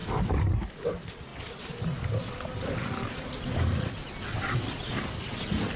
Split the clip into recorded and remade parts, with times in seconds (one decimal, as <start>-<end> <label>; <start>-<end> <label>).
0.0-5.8 recorded